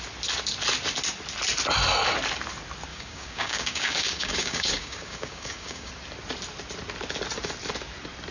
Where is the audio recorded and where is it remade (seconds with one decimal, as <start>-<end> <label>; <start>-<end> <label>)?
0.0-2.9 recorded; 2.9-5.9 remade; 5.9-8.3 recorded